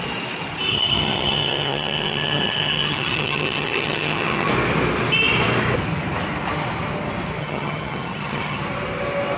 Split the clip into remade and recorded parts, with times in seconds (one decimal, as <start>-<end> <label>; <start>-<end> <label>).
0.0-0.7 recorded; 0.7-4.5 remade; 4.5-7.4 recorded; 7.4-8.6 remade; 8.6-9.4 recorded